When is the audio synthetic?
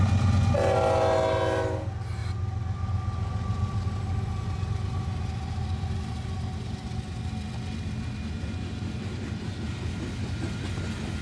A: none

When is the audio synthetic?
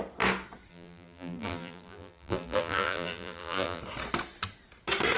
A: 0.7-3.8 (vocoder, BigVGAN v2)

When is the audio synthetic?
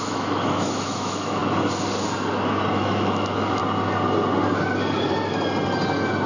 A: 0.0-1.4 (autoencoder, DAC-VAE); 2.7-3.6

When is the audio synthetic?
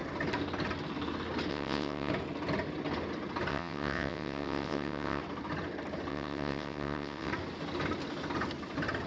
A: 1.5-2.1 (vocoder, WaveNeXt); 3.5-5.2; 6.1-7.3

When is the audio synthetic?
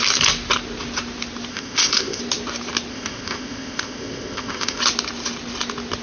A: 1.5-2.2 (codec, ZipCodec); 2.9-4.8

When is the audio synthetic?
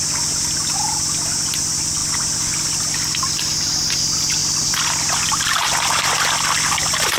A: 4.4-5.9 (vocoder, BigVGAN v2)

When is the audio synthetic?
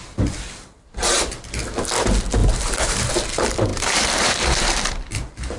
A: 2.4-3.1 (vocoder, BigVGAN v2); 3.7-4.9